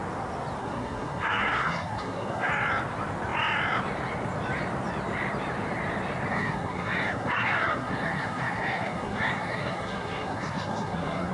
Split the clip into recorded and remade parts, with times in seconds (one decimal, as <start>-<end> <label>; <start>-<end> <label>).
0.0-0.6 recorded; 0.6-2.5 remade; 2.5-6.3 recorded; 6.3-11.3 remade